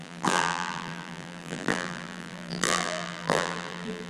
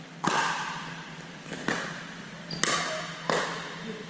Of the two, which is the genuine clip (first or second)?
second